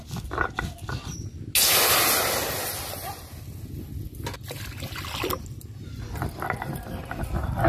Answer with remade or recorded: recorded